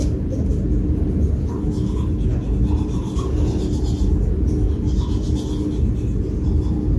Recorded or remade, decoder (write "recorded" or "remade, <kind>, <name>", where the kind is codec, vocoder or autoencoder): recorded